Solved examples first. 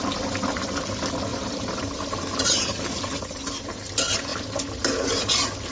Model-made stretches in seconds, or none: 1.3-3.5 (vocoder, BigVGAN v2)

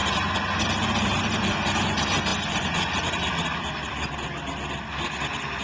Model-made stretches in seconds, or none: 2.3-4.1 (vocoder, BigVGAN v2)

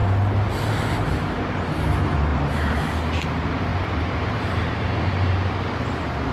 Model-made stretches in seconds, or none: 2.3-2.8 (vocoder, BigVGAN v2); 3.7-5.7

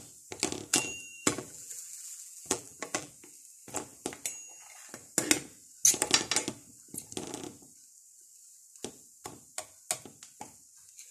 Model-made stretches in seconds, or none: 0.7-3.1 (vocoder, BigVGAN v2)

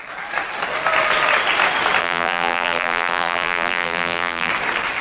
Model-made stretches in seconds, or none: 2.0-4.5 (vocoder, BigVGAN v2)